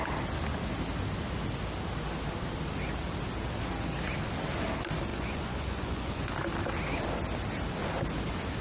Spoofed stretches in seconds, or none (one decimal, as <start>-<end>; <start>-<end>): 5.1-6.2